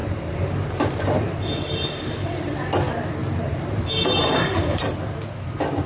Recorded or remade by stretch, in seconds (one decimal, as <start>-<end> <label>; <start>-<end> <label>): 0.0-2.5 remade; 2.5-3.2 recorded; 3.2-3.8 remade; 3.8-4.2 recorded; 4.2-4.9 remade; 4.9-5.9 recorded